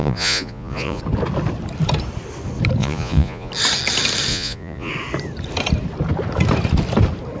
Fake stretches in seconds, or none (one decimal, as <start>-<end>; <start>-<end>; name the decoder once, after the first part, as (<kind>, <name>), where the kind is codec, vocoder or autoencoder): 0.0-1.0 (vocoder, Vocos); 2.8-3.5; 4.3-4.9